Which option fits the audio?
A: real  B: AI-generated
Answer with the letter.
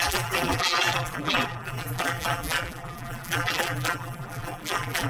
B